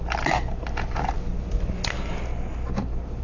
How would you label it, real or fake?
real